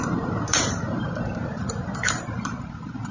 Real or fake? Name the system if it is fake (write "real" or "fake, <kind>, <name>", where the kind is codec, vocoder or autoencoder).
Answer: fake, vocoder, BigVGAN v2